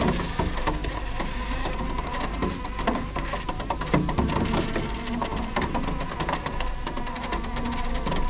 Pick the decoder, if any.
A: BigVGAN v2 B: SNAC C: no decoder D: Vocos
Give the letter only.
C